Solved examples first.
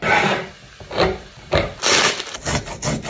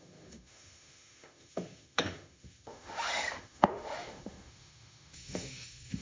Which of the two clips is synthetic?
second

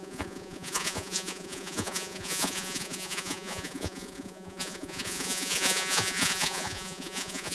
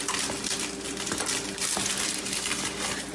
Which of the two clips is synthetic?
first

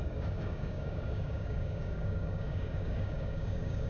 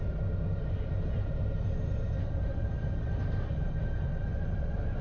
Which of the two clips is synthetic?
first